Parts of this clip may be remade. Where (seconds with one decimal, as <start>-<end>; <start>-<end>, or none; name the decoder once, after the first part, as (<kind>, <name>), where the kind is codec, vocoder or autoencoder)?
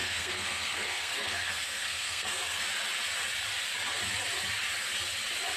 0.0-2.6 (codec, SNAC)